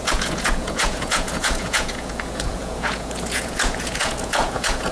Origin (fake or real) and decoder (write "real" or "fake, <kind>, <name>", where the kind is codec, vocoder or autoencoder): fake, vocoder, Vocos